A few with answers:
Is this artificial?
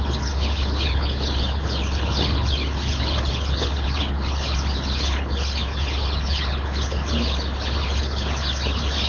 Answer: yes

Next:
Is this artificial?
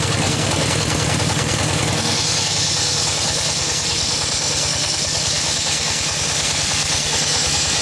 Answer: yes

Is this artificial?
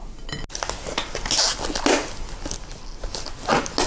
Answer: no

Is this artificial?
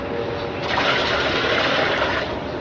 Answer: yes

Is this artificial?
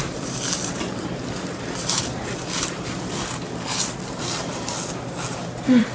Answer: no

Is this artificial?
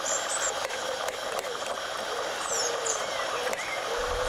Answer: yes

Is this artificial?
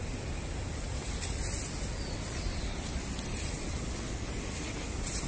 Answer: no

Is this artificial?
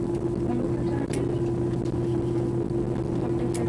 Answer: no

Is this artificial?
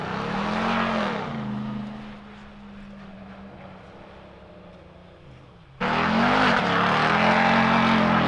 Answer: no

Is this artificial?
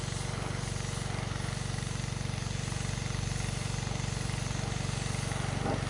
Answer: no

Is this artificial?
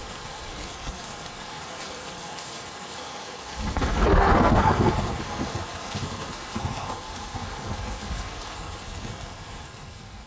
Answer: yes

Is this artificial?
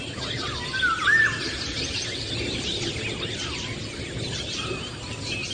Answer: no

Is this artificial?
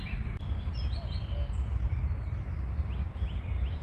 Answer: no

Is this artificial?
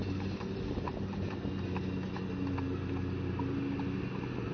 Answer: no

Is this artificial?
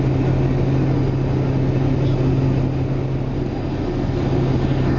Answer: no